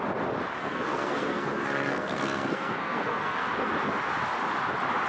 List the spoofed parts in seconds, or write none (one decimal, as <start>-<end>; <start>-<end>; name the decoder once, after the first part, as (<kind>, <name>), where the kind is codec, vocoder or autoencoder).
0.6-3.7 (codec, SNAC)